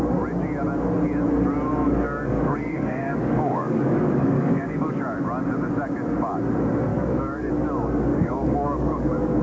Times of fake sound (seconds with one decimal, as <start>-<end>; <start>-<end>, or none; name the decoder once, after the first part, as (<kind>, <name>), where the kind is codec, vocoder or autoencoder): 1.8-4.9 (codec, DAC); 6.9-7.5; 8.1-9.4